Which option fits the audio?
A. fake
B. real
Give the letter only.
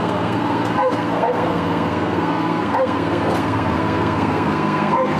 A